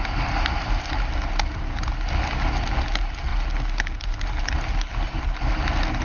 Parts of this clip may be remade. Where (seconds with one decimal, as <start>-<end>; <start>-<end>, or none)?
none